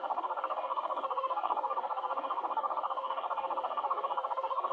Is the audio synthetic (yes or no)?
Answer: yes